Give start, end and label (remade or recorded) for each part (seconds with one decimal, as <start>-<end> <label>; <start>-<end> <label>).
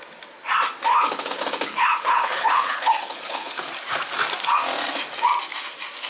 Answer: 0.0-0.9 recorded; 0.9-3.7 remade; 3.7-6.1 recorded